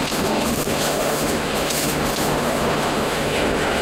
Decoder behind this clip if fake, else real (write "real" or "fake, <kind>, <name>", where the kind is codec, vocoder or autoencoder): fake, autoencoder, DAC-VAE